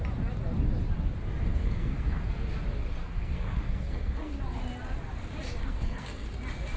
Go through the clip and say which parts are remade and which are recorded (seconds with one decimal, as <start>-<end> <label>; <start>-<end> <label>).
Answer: 0.0-1.5 recorded; 1.5-2.2 remade; 2.2-3.0 recorded; 3.0-4.4 remade; 4.4-5.6 recorded; 5.6-6.3 remade; 6.3-6.8 recorded